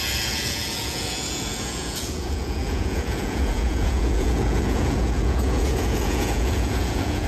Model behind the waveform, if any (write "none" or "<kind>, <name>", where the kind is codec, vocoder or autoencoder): vocoder, Vocos